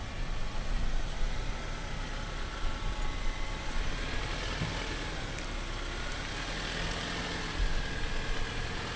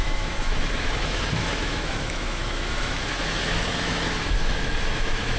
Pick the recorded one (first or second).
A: first